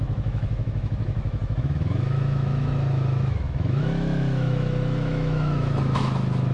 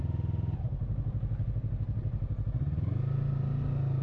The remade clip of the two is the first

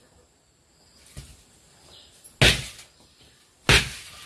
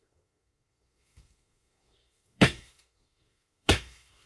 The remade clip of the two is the second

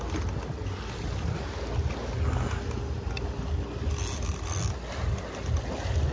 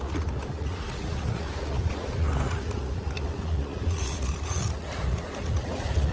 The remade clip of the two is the second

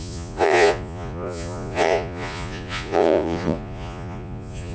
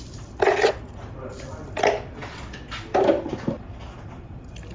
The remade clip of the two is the first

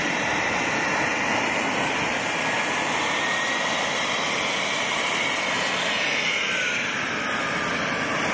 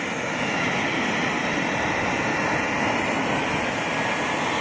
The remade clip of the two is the first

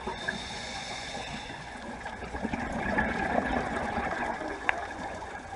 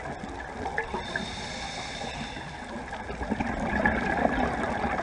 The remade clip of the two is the first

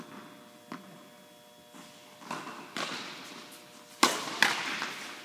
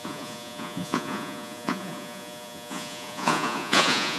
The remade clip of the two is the second